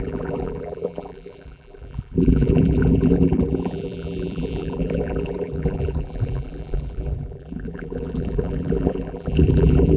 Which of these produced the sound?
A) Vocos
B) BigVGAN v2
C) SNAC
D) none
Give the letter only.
B